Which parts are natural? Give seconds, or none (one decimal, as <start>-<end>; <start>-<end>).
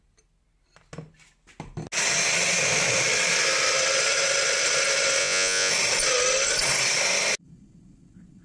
0.0-5.2; 5.7-8.4